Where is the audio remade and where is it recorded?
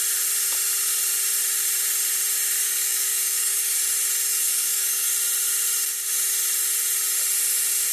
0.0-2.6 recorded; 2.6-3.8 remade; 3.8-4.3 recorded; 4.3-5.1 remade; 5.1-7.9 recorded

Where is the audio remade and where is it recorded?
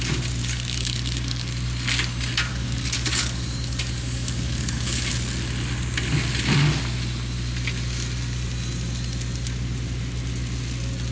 0.0-0.4 recorded; 0.4-1.5 remade; 1.5-2.5 recorded; 2.5-5.1 remade; 5.1-11.1 recorded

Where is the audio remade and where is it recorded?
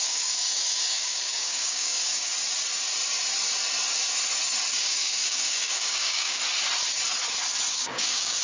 0.0-2.3 remade; 2.3-4.7 recorded; 4.7-6.4 remade; 6.4-7.7 recorded; 7.7-8.4 remade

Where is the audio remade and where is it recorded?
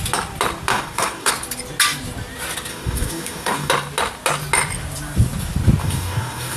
0.0-0.7 recorded; 0.7-1.3 remade; 1.3-2.7 recorded; 2.7-3.7 remade; 3.7-5.8 recorded; 5.8-6.6 remade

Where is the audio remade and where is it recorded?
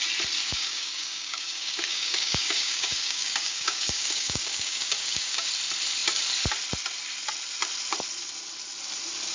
0.0-0.4 recorded; 0.4-5.5 remade; 5.5-9.3 recorded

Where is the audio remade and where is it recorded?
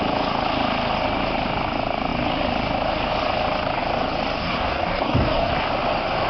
0.0-4.4 recorded; 4.4-5.5 remade; 5.5-6.3 recorded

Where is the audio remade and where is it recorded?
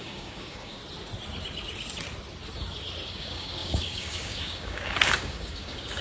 0.0-0.8 remade; 0.8-3.1 recorded; 3.1-6.0 remade